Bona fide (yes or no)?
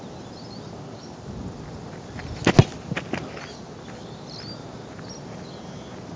yes